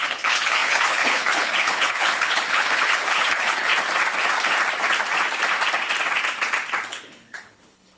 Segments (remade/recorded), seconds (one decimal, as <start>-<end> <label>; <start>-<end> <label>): 0.0-3.7 remade; 3.7-6.9 recorded; 6.9-8.0 remade